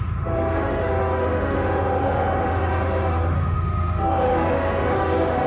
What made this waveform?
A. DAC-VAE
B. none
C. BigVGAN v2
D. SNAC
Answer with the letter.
A